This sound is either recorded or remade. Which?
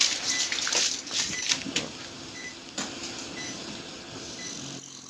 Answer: recorded